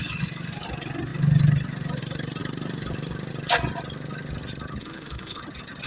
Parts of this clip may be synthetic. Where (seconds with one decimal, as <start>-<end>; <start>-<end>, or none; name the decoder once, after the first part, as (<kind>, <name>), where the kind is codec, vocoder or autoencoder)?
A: 4.8-5.4 (autoencoder, DAC-VAE)